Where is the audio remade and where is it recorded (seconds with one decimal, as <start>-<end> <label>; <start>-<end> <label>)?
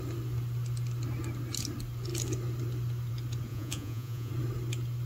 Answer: 0.0-3.5 recorded; 3.5-4.3 remade; 4.3-5.1 recorded